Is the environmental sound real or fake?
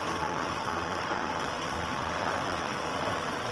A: fake